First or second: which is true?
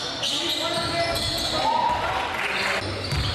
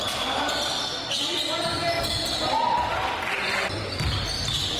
first